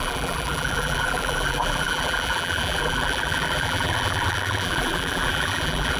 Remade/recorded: remade